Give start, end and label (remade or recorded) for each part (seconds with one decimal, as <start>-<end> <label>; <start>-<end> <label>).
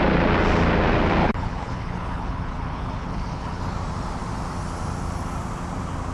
0.0-1.2 recorded; 1.2-3.6 remade; 3.6-6.1 recorded